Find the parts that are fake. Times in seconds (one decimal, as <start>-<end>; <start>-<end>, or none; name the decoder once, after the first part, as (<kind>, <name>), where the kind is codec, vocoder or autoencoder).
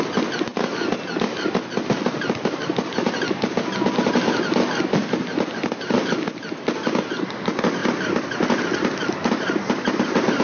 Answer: none